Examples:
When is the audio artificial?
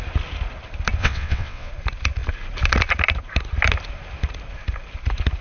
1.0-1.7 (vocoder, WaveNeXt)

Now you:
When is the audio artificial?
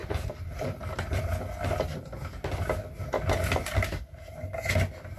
0.0-1.2 (vocoder, BigVGAN v2)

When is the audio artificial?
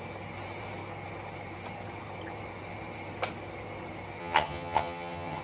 4.2-5.4 (vocoder, HiFi-GAN)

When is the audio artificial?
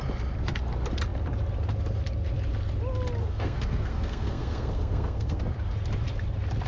3.2-5.4 (codec, SNAC)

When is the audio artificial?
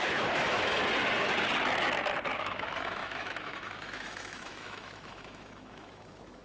0.0-0.8 (autoencoder, DAC-VAE); 2.4-6.4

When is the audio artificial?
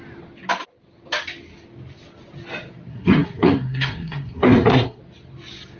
2.9-5.0 (codec, SNAC)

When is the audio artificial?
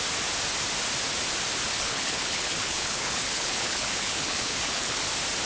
1.7-5.0 (codec, HILCodec)